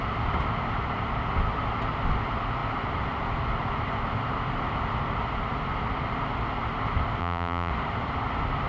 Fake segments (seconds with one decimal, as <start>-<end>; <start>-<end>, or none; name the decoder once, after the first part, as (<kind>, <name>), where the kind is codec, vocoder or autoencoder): 7.2-7.7 (vocoder, BigVGAN v2)